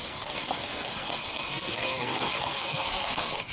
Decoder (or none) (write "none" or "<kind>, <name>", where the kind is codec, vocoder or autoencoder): codec, SNAC